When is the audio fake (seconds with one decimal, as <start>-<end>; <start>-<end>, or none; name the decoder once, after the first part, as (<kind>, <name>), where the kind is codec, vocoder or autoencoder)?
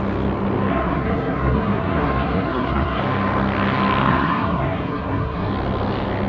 0.7-3.0 (codec, SNAC); 4.0-5.5